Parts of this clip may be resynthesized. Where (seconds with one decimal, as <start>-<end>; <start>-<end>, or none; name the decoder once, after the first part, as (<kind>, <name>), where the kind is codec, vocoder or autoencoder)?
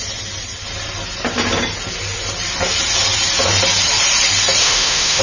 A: 4.6-5.2 (autoencoder, DAC-VAE)